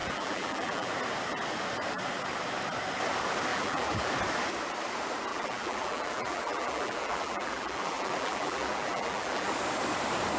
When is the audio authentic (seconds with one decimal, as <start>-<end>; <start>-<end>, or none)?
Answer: 0.9-3.5; 4.1-5.3; 9.5-10.4